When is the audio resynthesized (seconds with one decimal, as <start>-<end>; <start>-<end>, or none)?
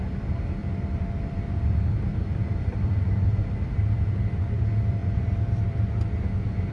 0.6-4.6; 5.0-5.9